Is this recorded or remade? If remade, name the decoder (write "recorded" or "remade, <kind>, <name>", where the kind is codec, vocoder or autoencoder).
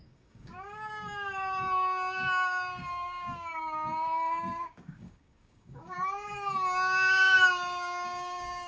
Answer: remade, codec, DAC